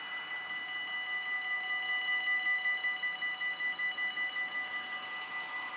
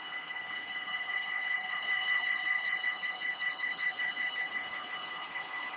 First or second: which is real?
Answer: first